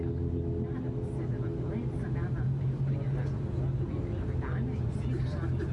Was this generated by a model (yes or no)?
no